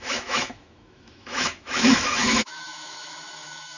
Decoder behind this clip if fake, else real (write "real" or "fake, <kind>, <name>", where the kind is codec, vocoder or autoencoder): fake, autoencoder, DAC-VAE